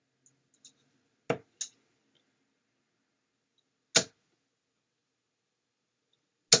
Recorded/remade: recorded